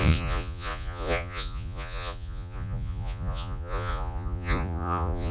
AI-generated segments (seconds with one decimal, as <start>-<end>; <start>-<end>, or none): 0.0-5.3